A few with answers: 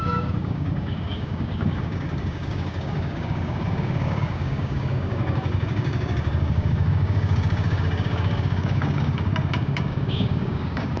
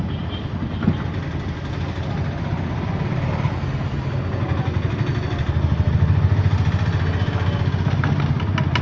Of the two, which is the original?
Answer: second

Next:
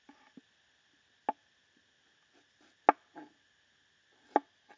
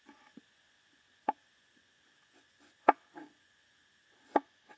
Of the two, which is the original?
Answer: first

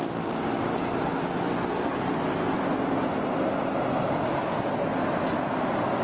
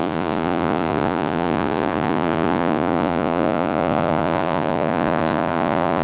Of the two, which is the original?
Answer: first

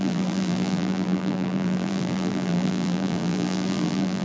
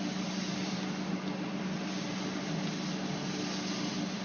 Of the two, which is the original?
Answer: second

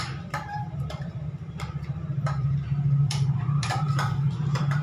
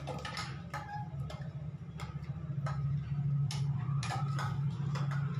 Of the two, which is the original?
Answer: second